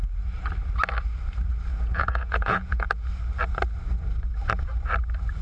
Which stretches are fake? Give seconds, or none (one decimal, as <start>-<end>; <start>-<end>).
1.7-3.1